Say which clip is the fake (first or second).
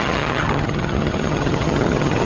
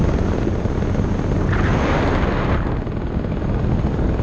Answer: first